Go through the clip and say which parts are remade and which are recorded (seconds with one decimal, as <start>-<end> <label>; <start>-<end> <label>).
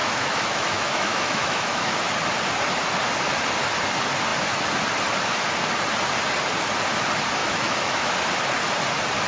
0.0-2.1 remade; 2.1-7.4 recorded; 7.4-8.1 remade; 8.1-9.3 recorded